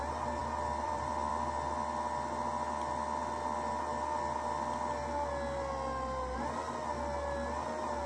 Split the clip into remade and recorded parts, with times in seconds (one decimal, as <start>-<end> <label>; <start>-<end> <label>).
0.0-0.4 recorded; 0.4-1.3 remade; 1.3-8.1 recorded